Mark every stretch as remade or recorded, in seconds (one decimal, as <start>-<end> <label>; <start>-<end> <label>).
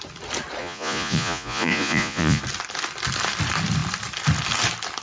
0.0-0.6 recorded; 0.6-2.4 remade; 2.4-5.0 recorded